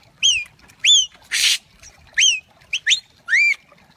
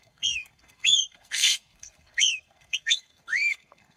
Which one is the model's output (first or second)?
second